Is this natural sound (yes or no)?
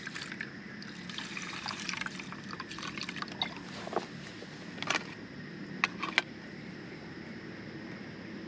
yes